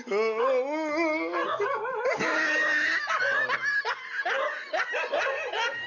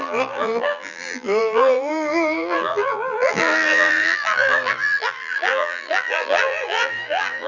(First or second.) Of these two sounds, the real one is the first